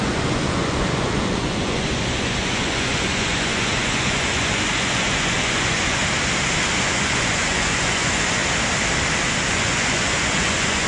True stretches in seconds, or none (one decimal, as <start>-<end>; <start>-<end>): 6.0-6.8; 8.4-9.5